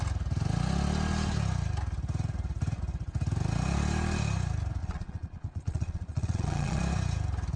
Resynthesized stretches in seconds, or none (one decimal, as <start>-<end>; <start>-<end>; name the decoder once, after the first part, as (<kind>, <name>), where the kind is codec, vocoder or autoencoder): 4.8-6.8 (vocoder, Vocos)